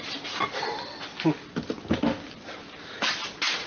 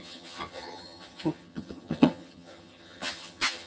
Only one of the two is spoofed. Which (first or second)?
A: second